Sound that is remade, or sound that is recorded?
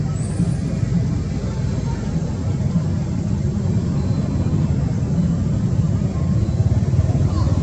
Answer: recorded